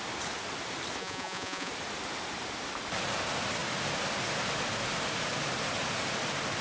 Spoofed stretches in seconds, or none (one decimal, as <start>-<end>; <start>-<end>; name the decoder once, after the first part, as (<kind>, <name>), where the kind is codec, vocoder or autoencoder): 1.0-1.7 (vocoder, Vocos)

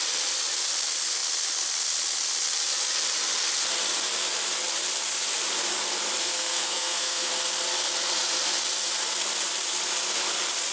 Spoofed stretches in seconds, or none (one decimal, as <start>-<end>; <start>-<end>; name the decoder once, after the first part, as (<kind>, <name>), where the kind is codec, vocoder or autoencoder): 6.2-7.3 (codec, SNAC)

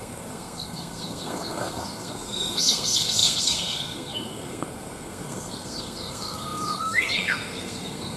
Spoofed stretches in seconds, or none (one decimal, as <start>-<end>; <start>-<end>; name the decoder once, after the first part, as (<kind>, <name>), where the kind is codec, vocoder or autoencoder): 0.0-8.2 (codec, SNAC)

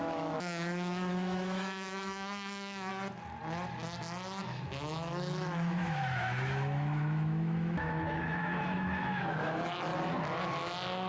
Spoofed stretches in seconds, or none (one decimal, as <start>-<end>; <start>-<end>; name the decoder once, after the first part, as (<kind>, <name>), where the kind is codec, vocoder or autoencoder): 0.0-2.9 (autoencoder, DAC-VAE); 4.4-9.9